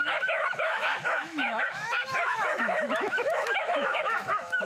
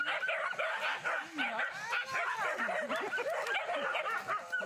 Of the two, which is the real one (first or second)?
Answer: second